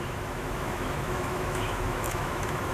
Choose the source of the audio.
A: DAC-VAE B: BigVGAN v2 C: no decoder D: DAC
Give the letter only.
A